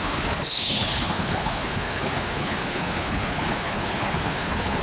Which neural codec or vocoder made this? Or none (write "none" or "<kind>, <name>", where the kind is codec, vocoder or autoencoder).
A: codec, HILCodec